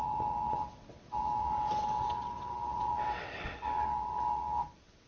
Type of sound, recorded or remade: remade